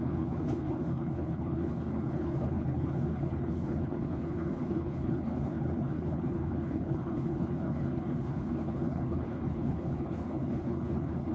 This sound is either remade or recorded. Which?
remade